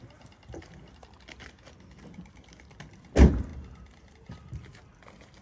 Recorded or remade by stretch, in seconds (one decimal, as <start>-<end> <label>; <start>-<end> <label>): 0.0-5.4 recorded